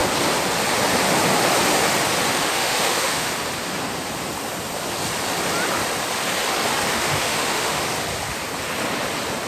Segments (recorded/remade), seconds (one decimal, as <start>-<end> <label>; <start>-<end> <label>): 0.0-2.3 recorded; 2.3-3.3 remade; 3.3-6.9 recorded; 6.9-7.8 remade; 7.8-9.5 recorded